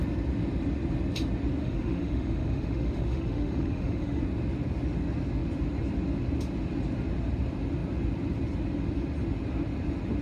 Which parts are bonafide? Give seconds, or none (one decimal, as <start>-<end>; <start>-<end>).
0.0-1.6; 4.2-10.2